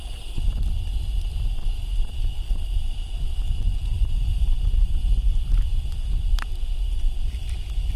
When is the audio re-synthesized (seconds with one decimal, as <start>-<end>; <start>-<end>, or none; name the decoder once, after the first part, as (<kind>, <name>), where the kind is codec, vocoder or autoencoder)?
none